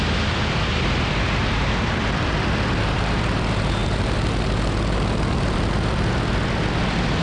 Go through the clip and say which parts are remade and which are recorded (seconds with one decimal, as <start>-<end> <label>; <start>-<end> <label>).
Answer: 0.0-3.8 remade; 3.8-6.1 recorded; 6.1-7.2 remade